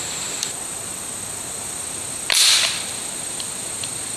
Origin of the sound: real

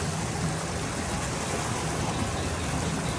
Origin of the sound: real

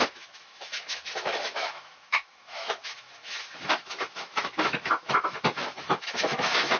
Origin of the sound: fake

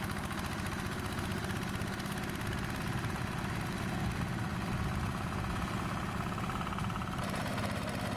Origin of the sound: real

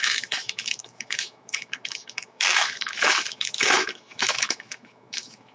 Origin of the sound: fake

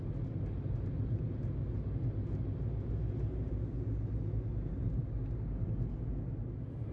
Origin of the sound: real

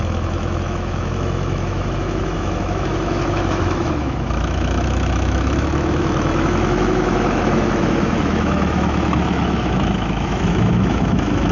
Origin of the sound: fake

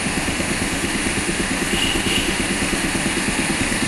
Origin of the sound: fake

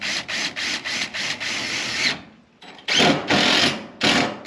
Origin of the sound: real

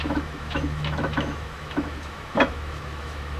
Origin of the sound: fake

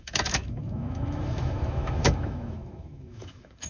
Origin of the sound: fake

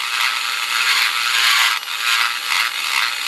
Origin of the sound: real